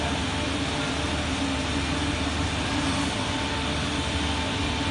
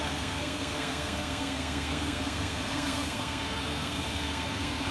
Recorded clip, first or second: first